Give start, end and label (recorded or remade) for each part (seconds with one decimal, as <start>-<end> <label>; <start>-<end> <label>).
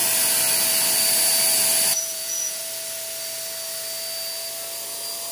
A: 0.0-1.9 recorded; 1.9-2.6 remade; 2.6-5.3 recorded